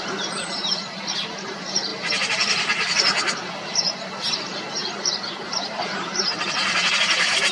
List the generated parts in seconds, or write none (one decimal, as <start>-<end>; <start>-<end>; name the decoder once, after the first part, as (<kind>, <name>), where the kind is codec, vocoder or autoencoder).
0.0-7.5 (vocoder, BigVGAN v2)